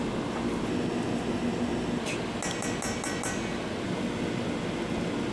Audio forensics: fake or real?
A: real